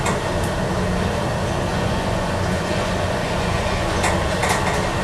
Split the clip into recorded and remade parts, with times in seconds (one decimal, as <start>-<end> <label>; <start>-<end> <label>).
0.0-1.7 recorded; 1.7-4.0 remade; 4.0-5.0 recorded